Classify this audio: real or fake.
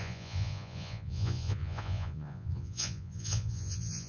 fake